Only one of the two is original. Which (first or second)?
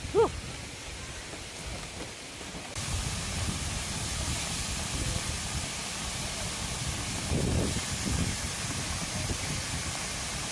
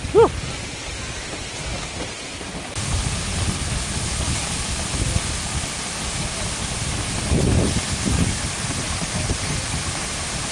second